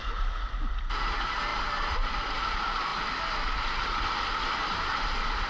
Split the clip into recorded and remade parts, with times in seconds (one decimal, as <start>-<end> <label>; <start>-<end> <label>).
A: 0.0-2.9 remade; 2.9-3.6 recorded; 3.6-5.5 remade

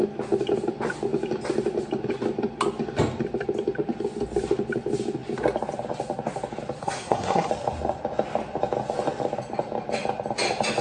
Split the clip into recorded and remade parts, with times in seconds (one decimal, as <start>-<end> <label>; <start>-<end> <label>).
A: 0.0-6.8 recorded; 6.8-7.5 remade; 7.5-10.8 recorded

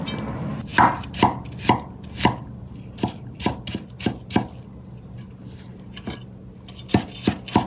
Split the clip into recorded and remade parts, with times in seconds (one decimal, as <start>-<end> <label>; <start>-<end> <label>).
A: 0.0-7.7 recorded

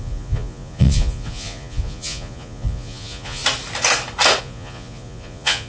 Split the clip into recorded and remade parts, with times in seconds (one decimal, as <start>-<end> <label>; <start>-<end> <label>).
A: 0.0-3.4 remade; 3.4-4.4 recorded; 4.4-5.7 remade

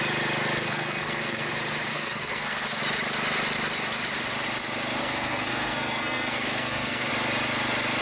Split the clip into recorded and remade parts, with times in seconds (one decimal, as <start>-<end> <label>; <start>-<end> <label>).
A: 0.0-0.6 recorded; 0.6-1.5 remade; 1.5-1.9 recorded; 1.9-2.8 remade; 2.8-5.0 recorded; 5.0-7.1 remade; 7.1-8.0 recorded

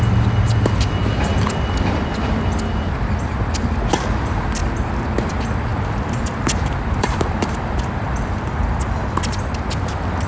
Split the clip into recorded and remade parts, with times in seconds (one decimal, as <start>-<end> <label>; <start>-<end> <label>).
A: 0.0-1.3 recorded; 1.3-2.1 remade; 2.1-5.7 recorded; 5.7-8.6 remade; 8.6-10.3 recorded